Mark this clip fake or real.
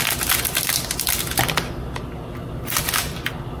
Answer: real